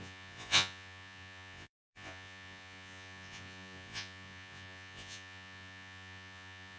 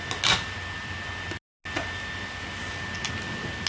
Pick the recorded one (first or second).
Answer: second